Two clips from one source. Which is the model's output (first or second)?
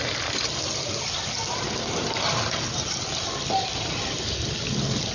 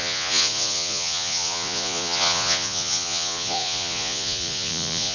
second